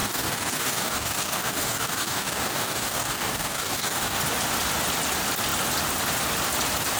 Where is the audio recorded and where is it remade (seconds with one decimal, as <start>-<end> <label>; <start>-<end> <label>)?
0.0-4.2 remade; 4.2-7.0 recorded